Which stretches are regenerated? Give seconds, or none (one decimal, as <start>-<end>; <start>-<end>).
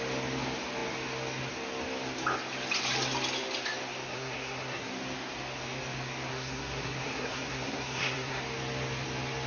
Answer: 4.1-4.9; 6.3-8.4